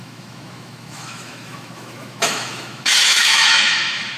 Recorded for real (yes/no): no